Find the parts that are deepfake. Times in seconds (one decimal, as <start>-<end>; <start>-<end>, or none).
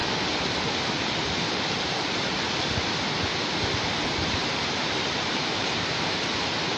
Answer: 3.5-6.8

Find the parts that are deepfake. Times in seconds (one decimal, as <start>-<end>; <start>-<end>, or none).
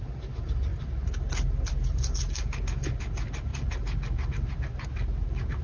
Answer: none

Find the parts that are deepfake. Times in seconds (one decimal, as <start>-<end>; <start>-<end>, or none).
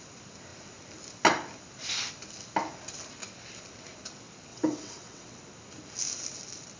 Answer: 4.5-5.4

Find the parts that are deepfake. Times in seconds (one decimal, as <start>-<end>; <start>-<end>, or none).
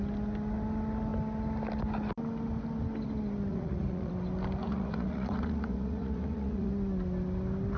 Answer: 3.5-4.1; 4.6-6.7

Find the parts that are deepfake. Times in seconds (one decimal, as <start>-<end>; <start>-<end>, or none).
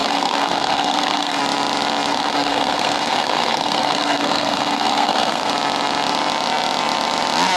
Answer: 0.0-1.4; 2.1-5.5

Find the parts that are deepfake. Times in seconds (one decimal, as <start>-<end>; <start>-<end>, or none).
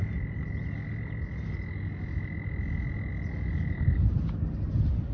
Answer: none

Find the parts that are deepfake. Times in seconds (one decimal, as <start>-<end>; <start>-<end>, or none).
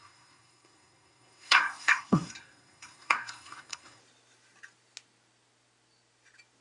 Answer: 0.0-4.0